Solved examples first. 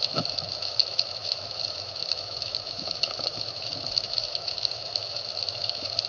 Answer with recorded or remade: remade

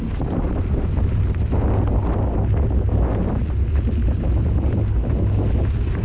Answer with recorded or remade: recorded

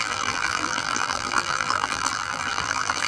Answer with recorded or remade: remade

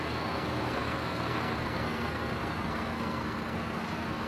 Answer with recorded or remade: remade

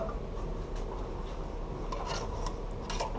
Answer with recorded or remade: recorded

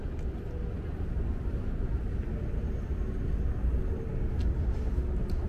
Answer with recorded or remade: recorded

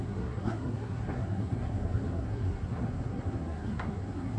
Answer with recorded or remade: remade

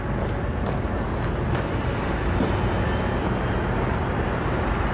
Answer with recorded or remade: recorded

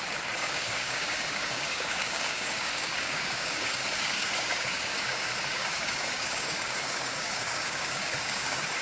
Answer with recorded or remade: remade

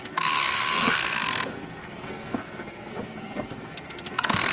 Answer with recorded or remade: remade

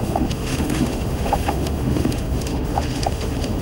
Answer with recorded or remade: remade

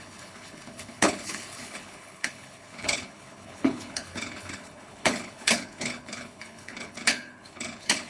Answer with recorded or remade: remade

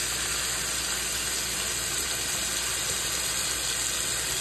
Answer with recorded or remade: recorded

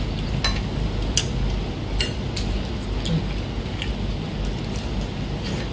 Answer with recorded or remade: recorded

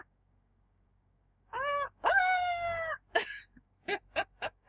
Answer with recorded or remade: remade